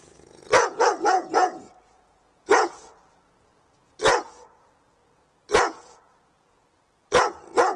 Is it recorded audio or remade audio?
remade